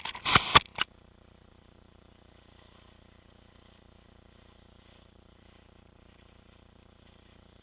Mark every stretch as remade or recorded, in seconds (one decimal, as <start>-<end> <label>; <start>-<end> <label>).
0.0-7.6 recorded